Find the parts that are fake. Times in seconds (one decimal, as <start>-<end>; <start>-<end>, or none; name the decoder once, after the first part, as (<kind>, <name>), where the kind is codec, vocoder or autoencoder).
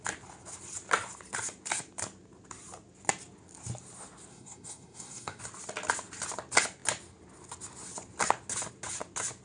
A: 4.3-5.4 (codec, SNAC)